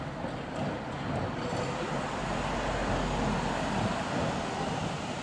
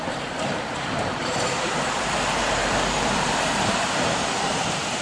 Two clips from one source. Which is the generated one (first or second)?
second